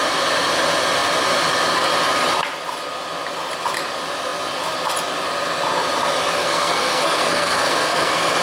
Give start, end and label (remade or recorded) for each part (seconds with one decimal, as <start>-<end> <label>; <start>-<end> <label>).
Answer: 0.0-6.4 recorded; 6.4-8.4 remade